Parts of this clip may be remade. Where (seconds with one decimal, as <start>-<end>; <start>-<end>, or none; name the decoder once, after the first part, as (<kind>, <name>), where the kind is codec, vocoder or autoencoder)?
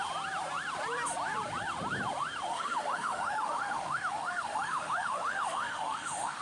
2.5-6.4 (autoencoder, DAC-VAE)